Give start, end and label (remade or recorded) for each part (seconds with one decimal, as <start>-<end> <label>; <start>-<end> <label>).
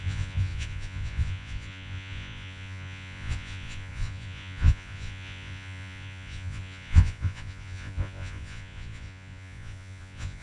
0.0-10.4 remade